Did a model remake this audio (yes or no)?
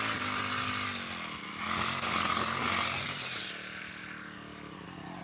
no